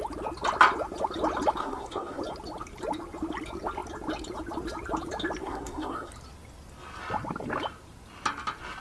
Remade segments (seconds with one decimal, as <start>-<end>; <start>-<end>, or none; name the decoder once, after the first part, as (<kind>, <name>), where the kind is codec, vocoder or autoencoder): 1.6-2.2 (codec, SNAC); 5.4-6.1